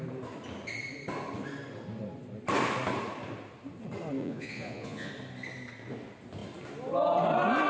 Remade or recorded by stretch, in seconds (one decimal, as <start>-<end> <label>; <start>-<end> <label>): 0.0-4.2 recorded; 4.2-5.1 remade; 5.1-7.7 recorded